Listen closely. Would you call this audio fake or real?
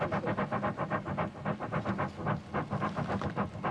real